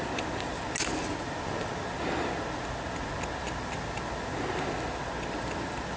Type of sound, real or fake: real